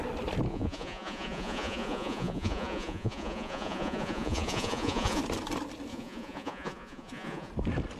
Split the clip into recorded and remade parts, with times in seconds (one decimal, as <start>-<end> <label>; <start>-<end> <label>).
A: 0.0-0.5 recorded; 0.5-5.2 remade; 5.2-5.9 recorded; 5.9-7.5 remade; 7.5-8.0 recorded